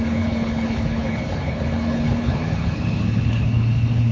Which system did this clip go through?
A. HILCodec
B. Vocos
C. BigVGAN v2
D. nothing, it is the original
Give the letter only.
A